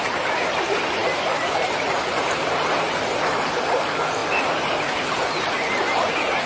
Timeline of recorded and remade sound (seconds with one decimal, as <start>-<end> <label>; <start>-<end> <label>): 0.0-6.5 recorded